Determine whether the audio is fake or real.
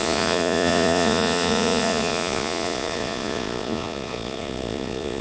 fake